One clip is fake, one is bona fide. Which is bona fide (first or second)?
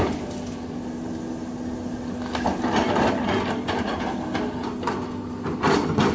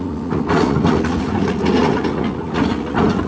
first